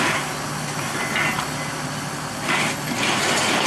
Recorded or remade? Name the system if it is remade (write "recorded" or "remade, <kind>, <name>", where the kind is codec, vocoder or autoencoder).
recorded